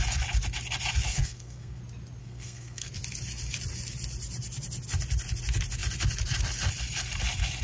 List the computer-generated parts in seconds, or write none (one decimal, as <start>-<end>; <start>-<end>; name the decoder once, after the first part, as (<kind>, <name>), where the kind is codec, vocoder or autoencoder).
1.1-1.8 (codec, SNAC); 2.2-2.9